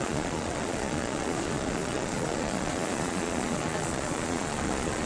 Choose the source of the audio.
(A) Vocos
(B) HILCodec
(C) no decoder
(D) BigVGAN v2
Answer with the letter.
A